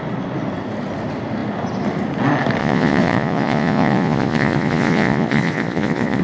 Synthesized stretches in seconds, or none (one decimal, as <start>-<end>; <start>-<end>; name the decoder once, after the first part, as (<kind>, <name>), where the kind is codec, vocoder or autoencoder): 2.6-6.2 (vocoder, Vocos)